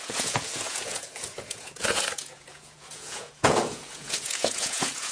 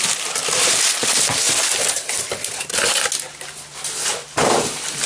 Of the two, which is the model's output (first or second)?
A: first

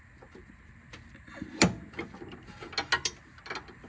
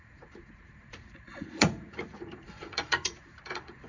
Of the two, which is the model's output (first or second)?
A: second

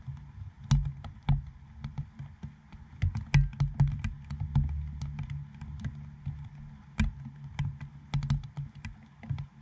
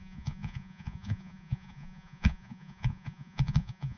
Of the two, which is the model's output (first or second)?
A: second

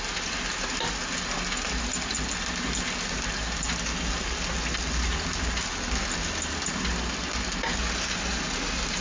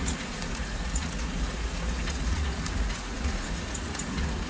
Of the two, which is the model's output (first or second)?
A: second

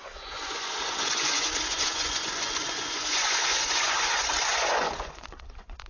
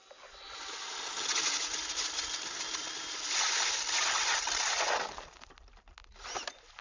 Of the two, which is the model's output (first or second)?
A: first